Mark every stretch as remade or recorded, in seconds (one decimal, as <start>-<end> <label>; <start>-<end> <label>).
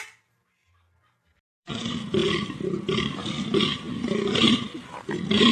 0.0-2.2 remade; 2.2-3.9 recorded; 3.9-5.5 remade